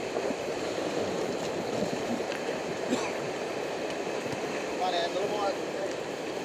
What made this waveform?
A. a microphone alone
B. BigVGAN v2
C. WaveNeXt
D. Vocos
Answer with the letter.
B